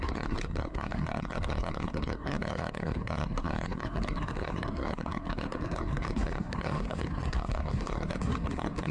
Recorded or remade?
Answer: remade